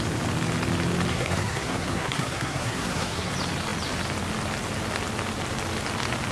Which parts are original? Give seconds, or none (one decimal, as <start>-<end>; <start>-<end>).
0.0-1.1; 3.3-6.3